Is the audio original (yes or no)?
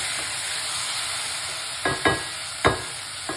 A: yes